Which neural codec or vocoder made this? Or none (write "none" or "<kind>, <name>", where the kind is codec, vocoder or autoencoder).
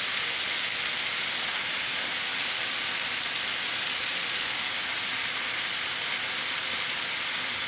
none